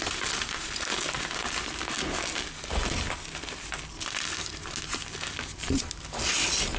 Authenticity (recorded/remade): recorded